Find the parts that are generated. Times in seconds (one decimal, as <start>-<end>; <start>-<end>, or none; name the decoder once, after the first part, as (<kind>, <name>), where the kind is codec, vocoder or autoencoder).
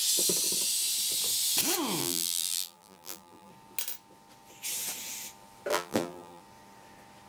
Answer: 2.0-3.5 (vocoder, BigVGAN v2); 5.7-6.4